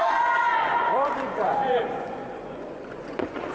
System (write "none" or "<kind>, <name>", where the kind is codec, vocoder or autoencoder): vocoder, Vocos